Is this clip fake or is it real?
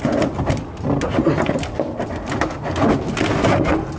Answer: real